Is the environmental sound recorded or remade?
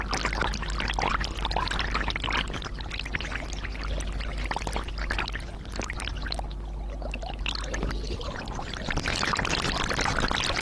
recorded